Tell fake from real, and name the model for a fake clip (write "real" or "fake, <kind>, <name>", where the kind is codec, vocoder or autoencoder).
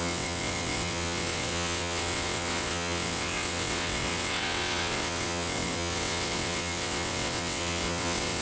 fake, vocoder, WaveNeXt